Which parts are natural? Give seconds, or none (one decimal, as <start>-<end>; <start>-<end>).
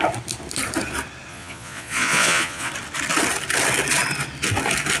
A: 0.0-1.3; 2.7-5.0